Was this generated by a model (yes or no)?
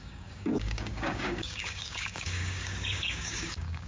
yes